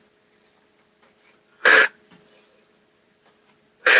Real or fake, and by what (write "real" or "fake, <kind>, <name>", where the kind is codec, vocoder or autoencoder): real